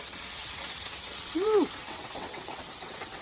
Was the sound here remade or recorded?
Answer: remade